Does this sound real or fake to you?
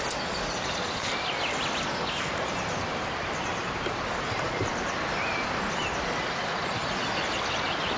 real